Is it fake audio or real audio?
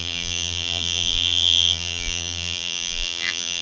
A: fake